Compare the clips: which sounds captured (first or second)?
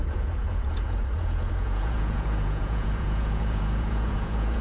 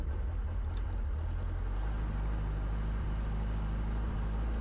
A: second